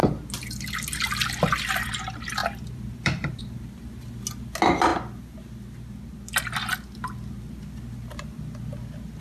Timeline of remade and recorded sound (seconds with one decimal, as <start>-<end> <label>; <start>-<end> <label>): 0.0-2.4 recorded; 2.4-3.4 remade; 3.4-9.2 recorded

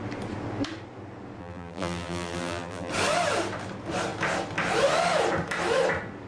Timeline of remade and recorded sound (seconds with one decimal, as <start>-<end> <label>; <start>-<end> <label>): 0.0-1.4 recorded; 1.4-2.9 remade; 2.9-6.3 recorded